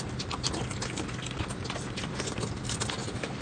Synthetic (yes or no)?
no